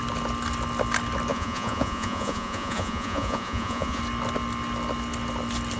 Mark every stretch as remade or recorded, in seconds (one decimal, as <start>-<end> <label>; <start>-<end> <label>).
0.0-1.3 recorded; 1.3-4.0 remade; 4.0-5.8 recorded